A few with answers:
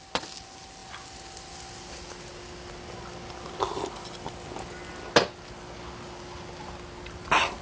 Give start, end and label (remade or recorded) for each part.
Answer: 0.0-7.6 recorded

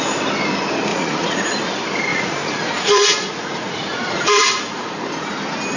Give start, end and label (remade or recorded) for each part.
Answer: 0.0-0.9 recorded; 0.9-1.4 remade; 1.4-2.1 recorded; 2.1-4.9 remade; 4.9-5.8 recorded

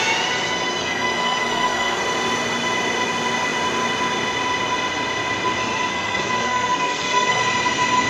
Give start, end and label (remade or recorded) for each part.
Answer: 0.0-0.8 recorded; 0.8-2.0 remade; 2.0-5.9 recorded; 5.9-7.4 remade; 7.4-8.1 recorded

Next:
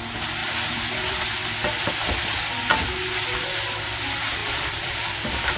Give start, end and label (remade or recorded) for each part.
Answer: 0.0-0.4 recorded; 0.4-1.3 remade; 1.3-4.4 recorded; 4.4-5.6 remade

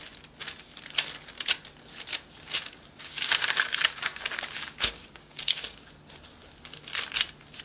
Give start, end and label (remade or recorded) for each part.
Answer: 0.0-3.0 recorded; 3.0-5.9 remade; 5.9-7.6 recorded